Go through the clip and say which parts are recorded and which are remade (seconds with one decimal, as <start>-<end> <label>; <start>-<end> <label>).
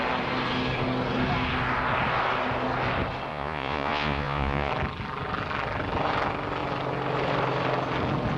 0.0-3.3 recorded; 3.3-4.7 remade; 4.7-8.4 recorded